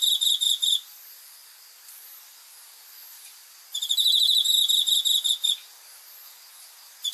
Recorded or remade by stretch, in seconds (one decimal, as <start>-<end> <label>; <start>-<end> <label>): 0.0-7.1 recorded

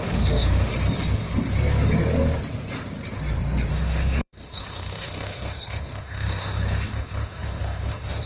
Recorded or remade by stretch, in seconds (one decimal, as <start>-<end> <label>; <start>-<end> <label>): 0.0-0.7 remade; 0.7-3.7 recorded; 3.7-8.3 remade

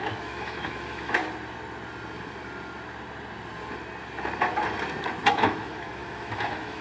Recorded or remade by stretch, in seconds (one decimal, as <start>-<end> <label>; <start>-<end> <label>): 0.0-1.2 remade; 1.2-5.3 recorded; 5.3-6.8 remade

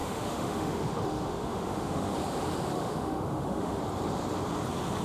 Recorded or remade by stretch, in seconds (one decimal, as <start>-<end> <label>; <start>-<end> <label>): 0.0-2.2 remade; 2.2-2.7 recorded; 2.7-3.8 remade; 3.8-5.0 recorded

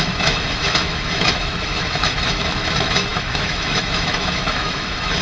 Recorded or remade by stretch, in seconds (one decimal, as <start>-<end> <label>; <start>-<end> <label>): 0.0-5.2 remade